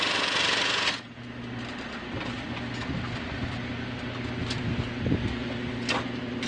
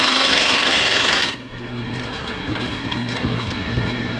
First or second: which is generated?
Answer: second